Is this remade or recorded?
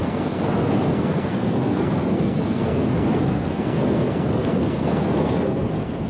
remade